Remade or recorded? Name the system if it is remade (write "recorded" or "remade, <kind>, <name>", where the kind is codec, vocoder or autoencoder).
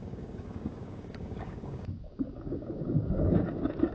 remade, codec, DAC